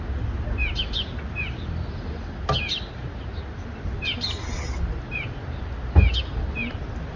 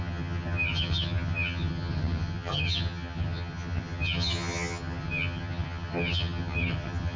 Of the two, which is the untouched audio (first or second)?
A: first